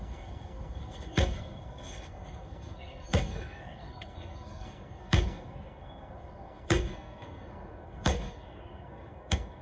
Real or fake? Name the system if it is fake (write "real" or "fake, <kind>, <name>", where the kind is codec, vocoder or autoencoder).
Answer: fake, codec, SNAC